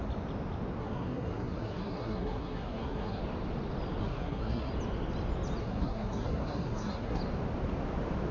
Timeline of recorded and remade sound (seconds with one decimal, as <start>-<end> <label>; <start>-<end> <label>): 0.0-0.8 recorded; 0.8-3.2 remade; 3.2-4.0 recorded; 4.0-4.7 remade; 4.7-5.6 recorded; 5.6-7.2 remade; 7.2-8.3 recorded